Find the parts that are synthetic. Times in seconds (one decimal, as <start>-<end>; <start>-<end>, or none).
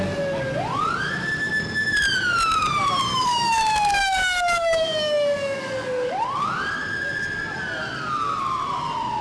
3.1-6.1